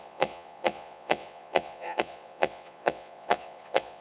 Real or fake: fake